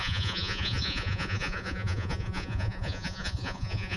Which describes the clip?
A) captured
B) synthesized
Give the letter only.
B